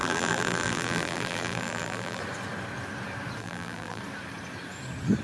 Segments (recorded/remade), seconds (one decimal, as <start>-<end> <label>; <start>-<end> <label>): 0.0-2.2 remade; 2.2-3.4 recorded; 3.4-4.0 remade; 4.0-5.2 recorded